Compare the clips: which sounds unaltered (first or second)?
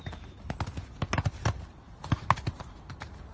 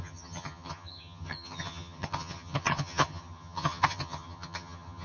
first